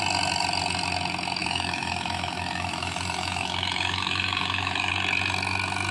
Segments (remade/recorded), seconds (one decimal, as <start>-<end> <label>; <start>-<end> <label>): 0.0-1.4 recorded; 1.4-4.9 remade; 4.9-5.9 recorded

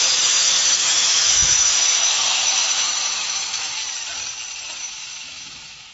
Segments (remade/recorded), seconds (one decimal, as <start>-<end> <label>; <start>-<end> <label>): 0.0-3.8 remade; 3.8-4.8 recorded; 4.8-5.9 remade

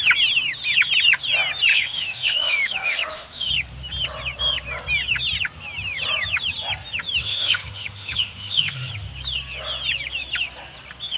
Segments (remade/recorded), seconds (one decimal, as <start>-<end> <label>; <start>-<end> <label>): 0.0-1.7 recorded; 1.7-3.5 remade; 3.5-7.2 recorded; 7.2-8.9 remade; 8.9-11.2 recorded

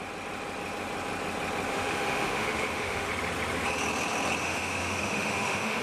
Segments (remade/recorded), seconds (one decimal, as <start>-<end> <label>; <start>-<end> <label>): 0.0-1.7 recorded; 1.7-3.1 remade; 3.1-4.4 recorded; 4.4-5.8 remade

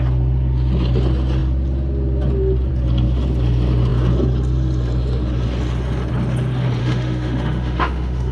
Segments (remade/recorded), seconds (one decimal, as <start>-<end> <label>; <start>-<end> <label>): 0.0-6.8 recorded; 6.8-8.3 remade

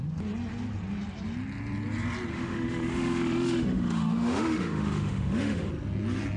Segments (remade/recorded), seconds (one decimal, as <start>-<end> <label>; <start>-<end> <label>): 0.0-2.3 recorded; 2.3-5.7 remade; 5.7-6.4 recorded

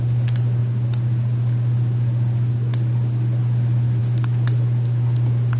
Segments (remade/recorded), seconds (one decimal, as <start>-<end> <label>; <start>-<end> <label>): 0.0-5.6 recorded